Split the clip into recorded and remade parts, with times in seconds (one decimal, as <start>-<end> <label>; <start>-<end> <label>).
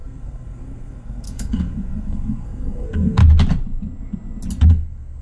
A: 0.0-3.2 remade; 3.2-4.7 recorded; 4.7-5.2 remade